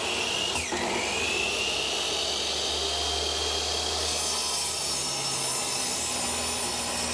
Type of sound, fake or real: real